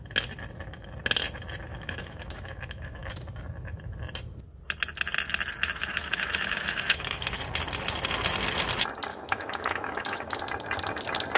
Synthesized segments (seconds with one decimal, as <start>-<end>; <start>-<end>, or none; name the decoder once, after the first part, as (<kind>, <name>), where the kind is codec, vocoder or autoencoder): 1.7-3.1 (autoencoder, DAC-VAE); 5.8-7.4; 9.1-10.4